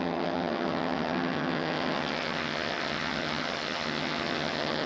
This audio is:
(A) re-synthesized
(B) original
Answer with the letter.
A